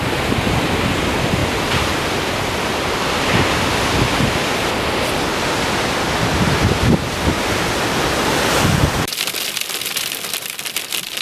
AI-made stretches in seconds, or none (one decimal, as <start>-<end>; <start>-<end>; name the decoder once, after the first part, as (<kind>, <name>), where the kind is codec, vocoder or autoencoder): 0.0-11.2 (vocoder, BigVGAN v2)